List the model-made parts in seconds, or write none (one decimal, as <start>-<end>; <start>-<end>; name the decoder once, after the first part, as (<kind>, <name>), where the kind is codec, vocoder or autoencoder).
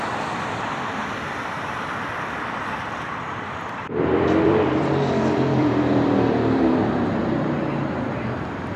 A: 0.0-7.2 (vocoder, BigVGAN v2); 8.2-8.8